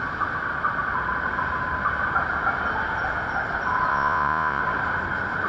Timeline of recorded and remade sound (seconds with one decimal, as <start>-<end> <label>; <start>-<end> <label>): 0.0-3.9 recorded; 3.9-4.6 remade; 4.6-5.5 recorded

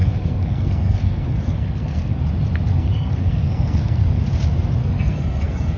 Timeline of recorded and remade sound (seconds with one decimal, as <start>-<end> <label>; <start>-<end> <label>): 0.0-2.2 remade; 2.2-2.7 recorded; 2.7-4.2 remade; 4.2-4.8 recorded; 4.8-5.8 remade

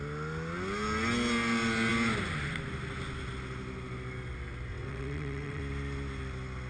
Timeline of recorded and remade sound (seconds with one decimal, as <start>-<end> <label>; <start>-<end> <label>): 0.0-4.7 recorded; 4.7-5.6 remade; 5.6-6.7 recorded